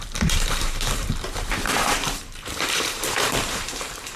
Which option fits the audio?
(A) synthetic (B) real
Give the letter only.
A